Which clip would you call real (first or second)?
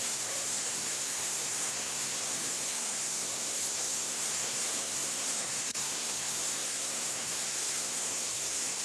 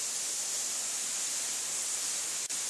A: second